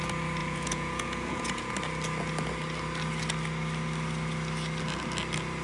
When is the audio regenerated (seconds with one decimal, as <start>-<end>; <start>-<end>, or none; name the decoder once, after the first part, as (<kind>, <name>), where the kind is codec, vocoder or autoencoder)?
0.4-1.7 (vocoder, Vocos)